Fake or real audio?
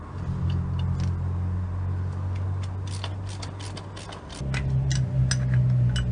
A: real